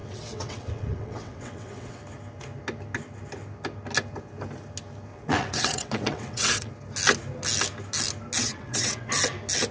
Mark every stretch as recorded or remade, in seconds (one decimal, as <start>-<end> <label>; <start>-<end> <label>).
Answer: 0.0-2.0 remade; 2.0-5.1 recorded; 5.1-6.7 remade; 6.7-8.4 recorded; 8.4-9.1 remade; 9.1-9.7 recorded